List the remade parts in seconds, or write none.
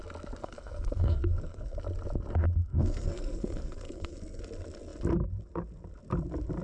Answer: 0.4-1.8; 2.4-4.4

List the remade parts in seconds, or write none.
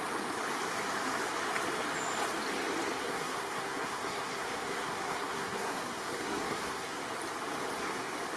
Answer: 3.0-7.0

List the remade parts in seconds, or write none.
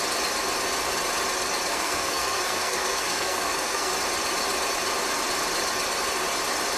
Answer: 1.7-3.9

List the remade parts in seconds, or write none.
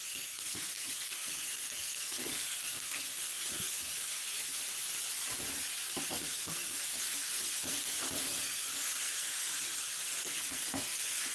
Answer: 0.0-4.6; 6.1-11.3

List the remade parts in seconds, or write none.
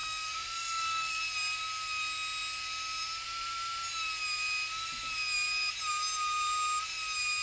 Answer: 0.0-1.2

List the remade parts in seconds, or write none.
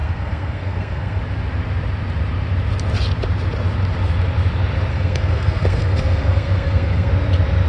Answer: 0.0-1.2; 4.9-7.1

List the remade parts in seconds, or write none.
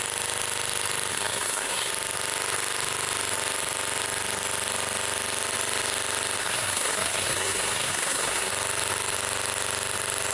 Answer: 1.1-1.9; 6.4-8.5